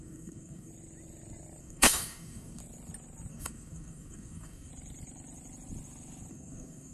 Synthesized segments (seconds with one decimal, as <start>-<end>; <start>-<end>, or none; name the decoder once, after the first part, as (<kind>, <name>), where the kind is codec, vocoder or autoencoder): 0.0-0.7 (codec, DAC); 1.6-2.6; 3.3-4.7; 6.3-6.9